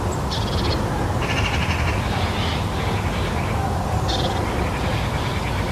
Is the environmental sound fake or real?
fake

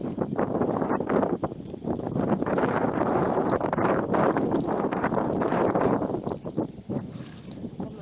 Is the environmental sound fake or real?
fake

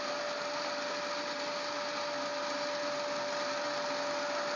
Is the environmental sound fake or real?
real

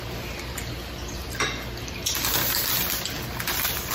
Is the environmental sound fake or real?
real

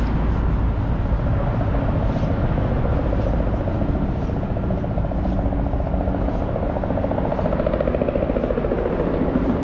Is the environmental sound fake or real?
real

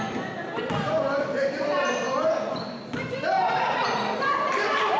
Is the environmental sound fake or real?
real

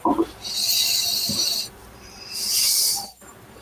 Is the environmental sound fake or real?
fake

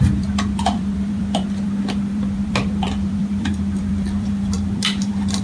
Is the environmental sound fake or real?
fake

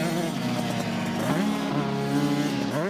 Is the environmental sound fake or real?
real